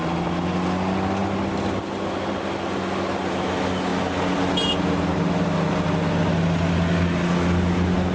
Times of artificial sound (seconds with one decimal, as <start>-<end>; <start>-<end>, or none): none